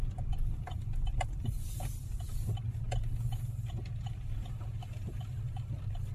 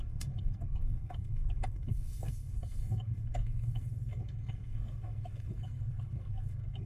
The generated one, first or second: second